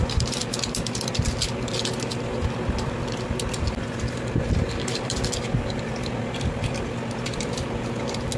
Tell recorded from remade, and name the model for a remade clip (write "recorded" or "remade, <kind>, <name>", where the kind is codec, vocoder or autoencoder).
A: recorded